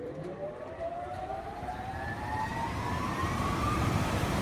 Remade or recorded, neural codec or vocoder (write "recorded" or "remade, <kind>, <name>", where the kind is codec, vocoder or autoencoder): remade, vocoder, BigVGAN v2